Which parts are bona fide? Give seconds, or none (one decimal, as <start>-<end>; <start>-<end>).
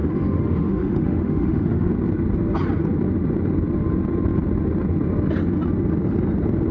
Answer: 1.9-6.7